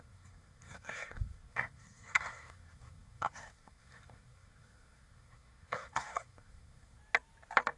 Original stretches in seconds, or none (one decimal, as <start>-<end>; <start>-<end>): 7.0-7.8